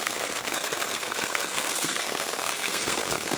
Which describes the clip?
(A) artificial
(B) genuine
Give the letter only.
A